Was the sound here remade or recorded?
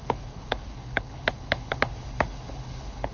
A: remade